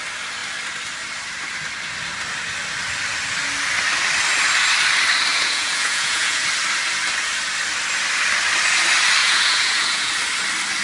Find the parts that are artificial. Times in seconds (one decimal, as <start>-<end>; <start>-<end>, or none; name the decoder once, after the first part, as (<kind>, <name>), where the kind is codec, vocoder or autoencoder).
5.3-6.4 (vocoder, Vocos); 9.2-10.1